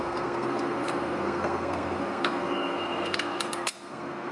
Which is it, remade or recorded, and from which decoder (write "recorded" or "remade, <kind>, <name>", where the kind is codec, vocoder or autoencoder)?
remade, codec, SNAC